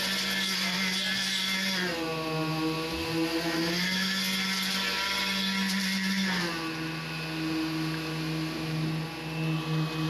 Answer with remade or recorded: recorded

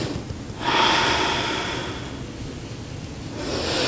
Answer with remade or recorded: recorded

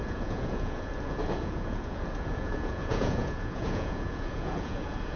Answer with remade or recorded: remade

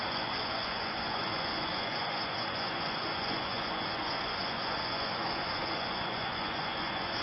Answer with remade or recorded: remade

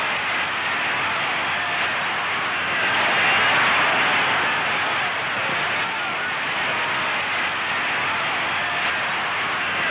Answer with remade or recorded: recorded